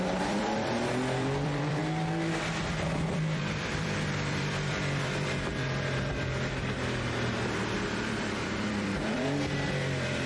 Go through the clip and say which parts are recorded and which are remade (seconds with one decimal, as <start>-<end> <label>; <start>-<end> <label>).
0.0-1.8 remade; 1.8-2.7 recorded; 2.7-10.3 remade